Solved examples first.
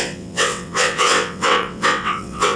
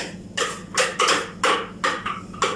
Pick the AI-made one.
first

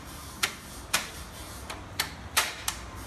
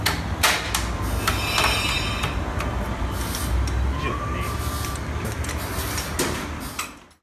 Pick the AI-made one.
first